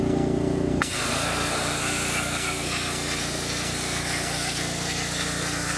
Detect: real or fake fake